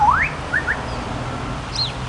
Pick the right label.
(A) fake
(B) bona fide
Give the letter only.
B